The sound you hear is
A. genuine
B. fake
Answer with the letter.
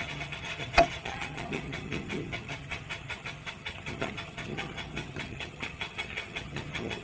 B